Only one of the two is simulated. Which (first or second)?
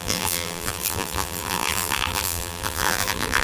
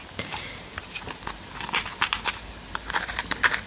first